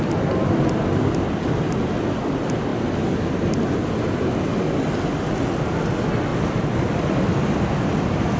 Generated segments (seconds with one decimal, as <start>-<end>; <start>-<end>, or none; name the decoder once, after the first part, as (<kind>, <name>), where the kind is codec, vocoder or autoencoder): none